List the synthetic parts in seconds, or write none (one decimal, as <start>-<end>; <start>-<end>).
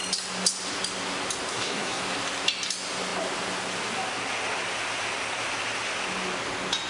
1.5-2.0